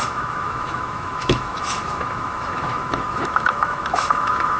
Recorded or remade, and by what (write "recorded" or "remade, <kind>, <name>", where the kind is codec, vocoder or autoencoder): remade, autoencoder, DAC-VAE